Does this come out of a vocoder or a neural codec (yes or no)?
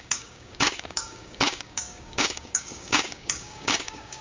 yes